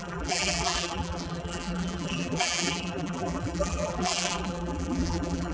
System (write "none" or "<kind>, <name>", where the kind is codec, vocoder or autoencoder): vocoder, BigVGAN v2